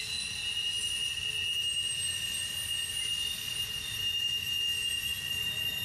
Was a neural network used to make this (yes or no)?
no